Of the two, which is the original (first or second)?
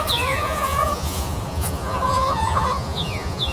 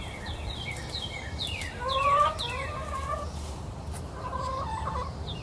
second